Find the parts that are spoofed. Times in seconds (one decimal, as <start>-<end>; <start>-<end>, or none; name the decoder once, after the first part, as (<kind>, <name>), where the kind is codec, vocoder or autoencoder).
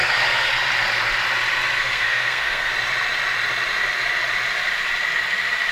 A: 0.0-0.5 (codec, SNAC); 1.8-2.7